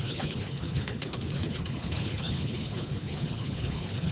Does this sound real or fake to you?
fake